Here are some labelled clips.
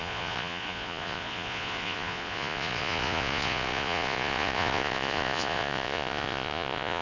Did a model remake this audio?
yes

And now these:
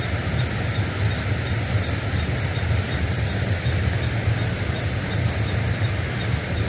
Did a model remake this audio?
no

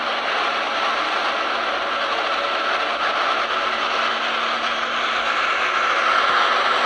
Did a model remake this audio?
no